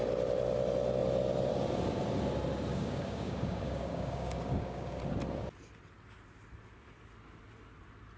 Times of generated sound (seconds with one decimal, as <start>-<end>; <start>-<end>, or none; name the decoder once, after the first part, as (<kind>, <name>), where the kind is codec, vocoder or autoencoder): 2.7-5.0 (codec, DAC)